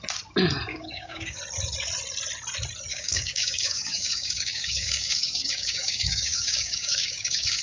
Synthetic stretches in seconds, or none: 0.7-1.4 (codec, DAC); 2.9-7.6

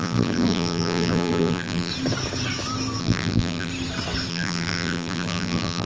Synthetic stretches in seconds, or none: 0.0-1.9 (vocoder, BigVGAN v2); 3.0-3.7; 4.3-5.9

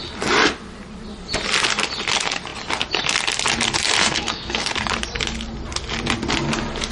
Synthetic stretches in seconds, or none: 4.0-4.7 (codec, SNAC)

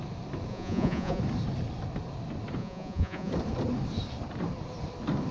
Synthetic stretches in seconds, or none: 0.5-1.2 (vocoder, Vocos); 2.6-3.3

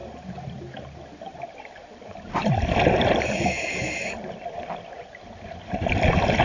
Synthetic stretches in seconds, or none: 2.4-3.5 (vocoder, BigVGAN v2)

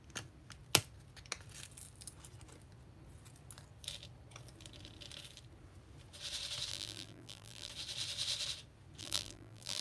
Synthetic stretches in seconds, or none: 6.7-7.7 (vocoder, BigVGAN v2); 9.0-9.8

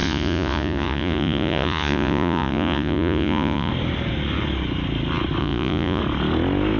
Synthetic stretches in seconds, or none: 0.0-3.7 (vocoder, Vocos); 5.4-6.0